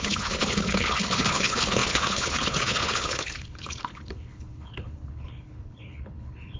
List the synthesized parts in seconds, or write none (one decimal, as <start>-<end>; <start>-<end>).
0.0-6.6